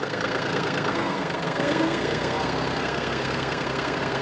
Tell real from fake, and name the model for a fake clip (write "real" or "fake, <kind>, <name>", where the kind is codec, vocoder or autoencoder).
fake, codec, SNAC